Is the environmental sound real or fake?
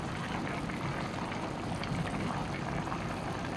real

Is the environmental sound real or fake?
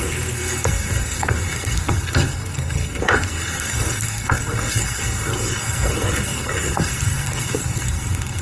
fake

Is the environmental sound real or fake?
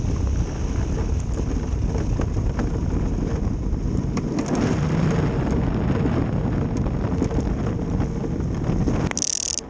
real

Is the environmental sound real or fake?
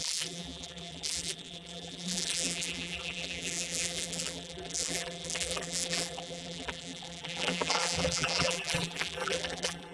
fake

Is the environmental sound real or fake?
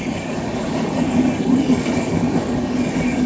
fake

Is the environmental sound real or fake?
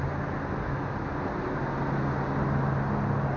real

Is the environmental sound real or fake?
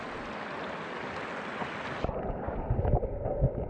real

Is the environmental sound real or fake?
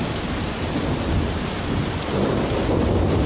real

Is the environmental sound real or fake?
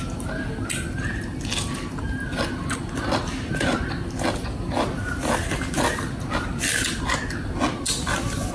real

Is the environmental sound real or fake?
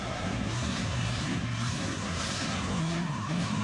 fake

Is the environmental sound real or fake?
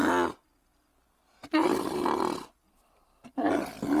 real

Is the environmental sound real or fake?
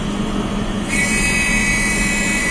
fake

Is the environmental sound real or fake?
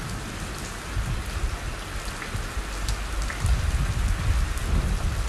real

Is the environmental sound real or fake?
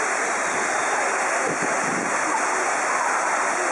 real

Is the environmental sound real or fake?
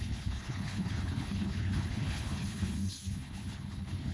fake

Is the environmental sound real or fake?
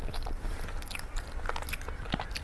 real